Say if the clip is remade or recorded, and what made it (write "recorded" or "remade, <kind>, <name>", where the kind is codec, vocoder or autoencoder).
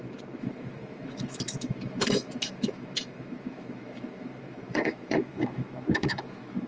remade, autoencoder, DAC-VAE